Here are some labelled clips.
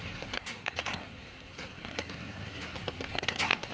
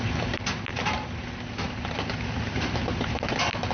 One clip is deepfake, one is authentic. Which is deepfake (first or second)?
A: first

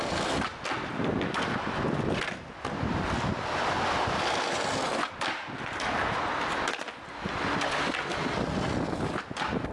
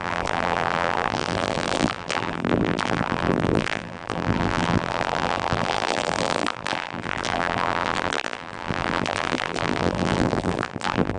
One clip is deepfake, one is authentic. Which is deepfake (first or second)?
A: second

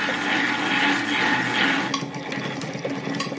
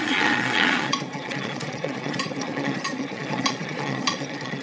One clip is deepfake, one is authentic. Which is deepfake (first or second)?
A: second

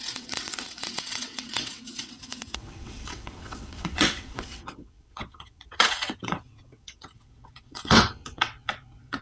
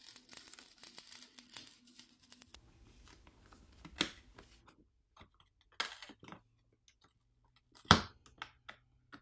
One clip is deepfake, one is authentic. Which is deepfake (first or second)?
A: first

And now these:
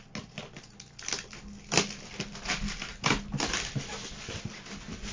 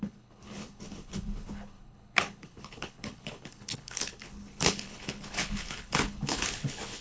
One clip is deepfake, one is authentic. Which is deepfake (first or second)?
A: second